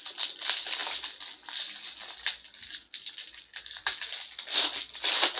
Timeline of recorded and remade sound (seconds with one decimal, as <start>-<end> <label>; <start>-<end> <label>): 0.0-5.4 recorded